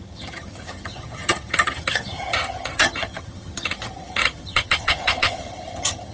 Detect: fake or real fake